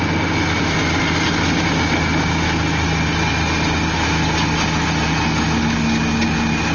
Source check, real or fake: real